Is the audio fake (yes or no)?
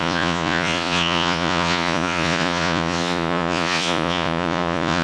yes